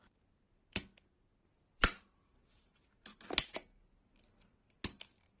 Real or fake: real